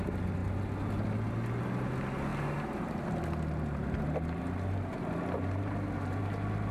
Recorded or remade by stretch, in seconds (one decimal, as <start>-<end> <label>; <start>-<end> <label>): 0.0-6.7 recorded